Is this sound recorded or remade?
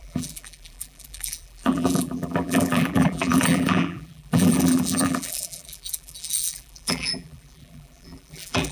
remade